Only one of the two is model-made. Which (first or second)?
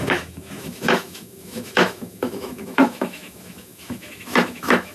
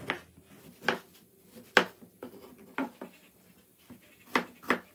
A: first